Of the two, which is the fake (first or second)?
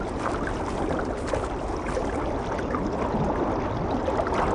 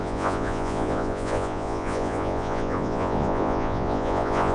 second